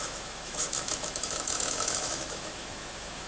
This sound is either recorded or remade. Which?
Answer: remade